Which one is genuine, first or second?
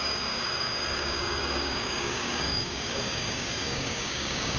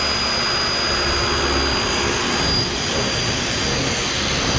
second